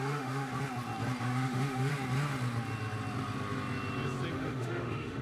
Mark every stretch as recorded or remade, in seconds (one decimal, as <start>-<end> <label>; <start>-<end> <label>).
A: 0.0-0.5 remade; 0.5-1.2 recorded; 1.2-1.9 remade; 1.9-4.3 recorded; 4.3-5.2 remade